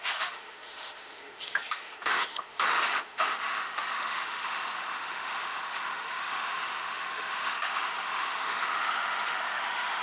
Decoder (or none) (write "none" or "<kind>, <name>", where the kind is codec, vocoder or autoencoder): autoencoder, DAC-VAE